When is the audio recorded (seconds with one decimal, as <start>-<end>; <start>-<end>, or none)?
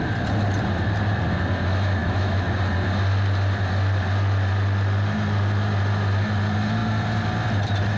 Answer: 0.0-2.0; 2.6-8.0